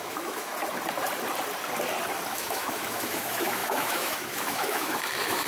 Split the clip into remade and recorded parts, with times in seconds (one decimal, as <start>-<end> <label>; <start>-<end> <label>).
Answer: 0.0-0.5 remade; 0.5-2.3 recorded; 2.3-5.5 remade